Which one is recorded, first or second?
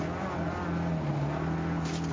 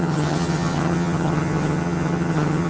first